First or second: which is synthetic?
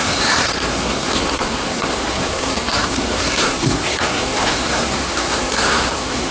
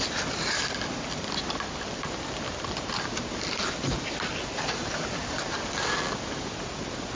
first